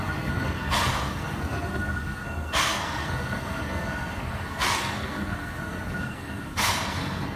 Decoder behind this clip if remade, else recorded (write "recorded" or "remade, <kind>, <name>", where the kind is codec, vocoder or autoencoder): remade, codec, SNAC